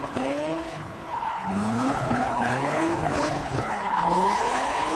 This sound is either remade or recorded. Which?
remade